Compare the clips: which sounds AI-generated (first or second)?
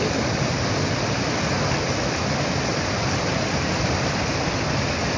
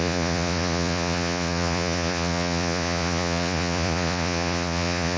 second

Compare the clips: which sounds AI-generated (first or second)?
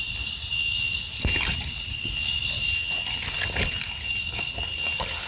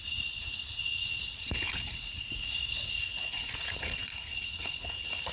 second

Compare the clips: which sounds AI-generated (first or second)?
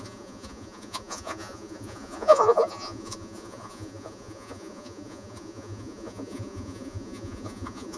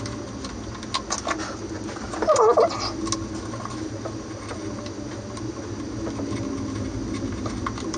first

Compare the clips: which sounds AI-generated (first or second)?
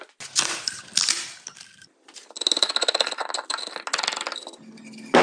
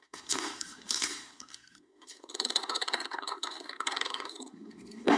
second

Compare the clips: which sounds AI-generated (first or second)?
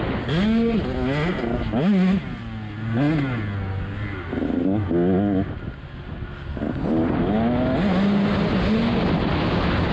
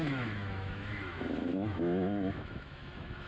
second